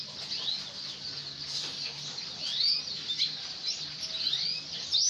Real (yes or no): yes